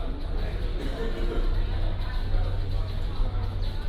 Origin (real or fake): real